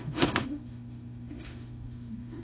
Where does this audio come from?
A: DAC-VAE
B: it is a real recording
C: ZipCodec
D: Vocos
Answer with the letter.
A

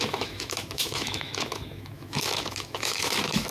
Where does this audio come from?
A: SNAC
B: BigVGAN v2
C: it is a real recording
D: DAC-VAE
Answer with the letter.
D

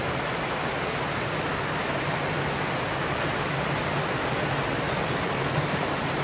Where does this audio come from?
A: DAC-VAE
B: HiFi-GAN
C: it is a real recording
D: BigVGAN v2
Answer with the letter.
C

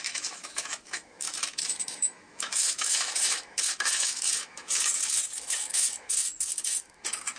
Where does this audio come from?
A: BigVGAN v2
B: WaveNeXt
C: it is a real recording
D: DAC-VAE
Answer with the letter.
D